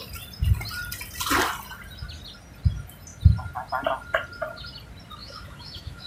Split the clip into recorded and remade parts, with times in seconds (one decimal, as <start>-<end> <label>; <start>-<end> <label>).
0.0-5.2 recorded; 5.2-6.1 remade